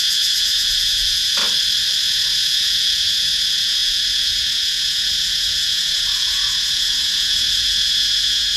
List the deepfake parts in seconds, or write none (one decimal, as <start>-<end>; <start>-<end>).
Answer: 0.0-1.4; 2.0-8.6

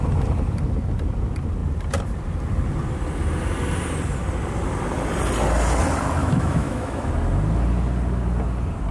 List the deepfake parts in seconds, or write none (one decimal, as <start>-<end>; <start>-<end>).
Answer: 6.2-7.1

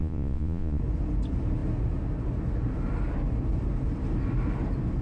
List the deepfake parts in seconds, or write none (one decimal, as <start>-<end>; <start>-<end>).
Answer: 0.0-0.8

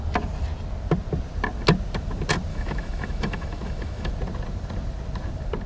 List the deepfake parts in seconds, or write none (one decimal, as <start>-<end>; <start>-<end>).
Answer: 2.5-4.1

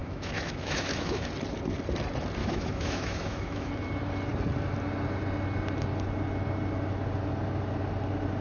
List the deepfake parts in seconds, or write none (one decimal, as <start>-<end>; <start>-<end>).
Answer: 0.0-1.3; 2.4-3.7